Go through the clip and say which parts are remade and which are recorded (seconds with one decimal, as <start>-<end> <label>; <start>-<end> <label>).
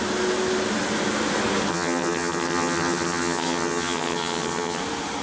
0.0-1.7 recorded; 1.7-4.8 remade; 4.8-5.2 recorded